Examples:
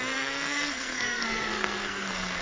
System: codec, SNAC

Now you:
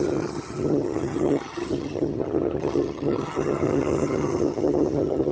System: vocoder, HiFi-GAN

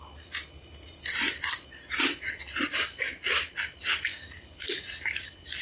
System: none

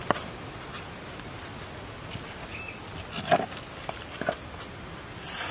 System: none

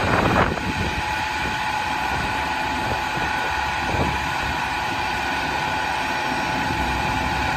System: vocoder, BigVGAN v2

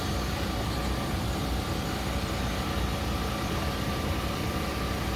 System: none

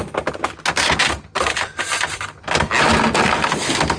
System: none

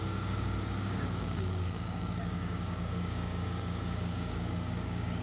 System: codec, DAC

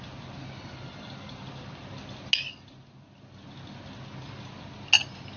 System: none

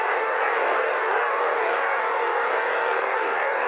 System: codec, DAC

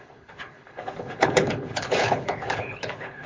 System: codec, HILCodec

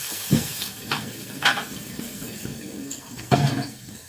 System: codec, SNAC